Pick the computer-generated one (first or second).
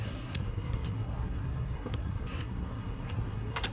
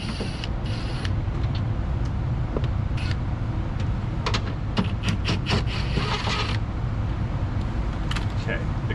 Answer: first